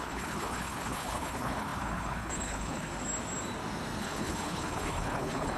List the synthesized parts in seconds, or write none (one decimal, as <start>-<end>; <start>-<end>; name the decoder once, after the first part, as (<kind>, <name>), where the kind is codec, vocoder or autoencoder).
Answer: 0.0-2.9 (codec, HILCodec); 4.0-5.6